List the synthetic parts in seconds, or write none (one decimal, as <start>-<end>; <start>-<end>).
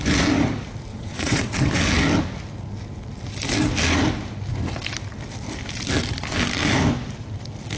0.9-1.7